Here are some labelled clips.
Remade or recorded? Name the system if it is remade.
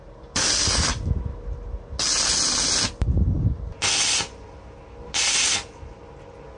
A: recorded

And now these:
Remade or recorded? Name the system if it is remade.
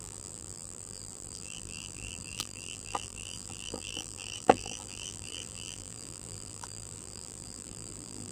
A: remade, vocoder, BigVGAN v2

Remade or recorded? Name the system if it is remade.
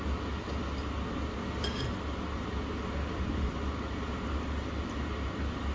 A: recorded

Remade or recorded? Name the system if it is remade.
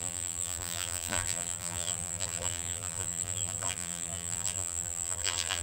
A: remade, vocoder, BigVGAN v2